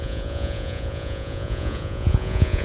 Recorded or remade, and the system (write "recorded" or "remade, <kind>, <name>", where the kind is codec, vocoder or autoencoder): remade, vocoder, Vocos